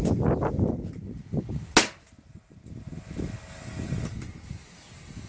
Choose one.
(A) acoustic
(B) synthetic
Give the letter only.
A